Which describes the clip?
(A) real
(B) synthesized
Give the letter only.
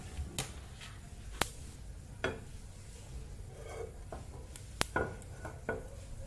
A